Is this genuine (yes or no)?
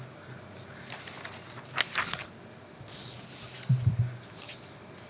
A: yes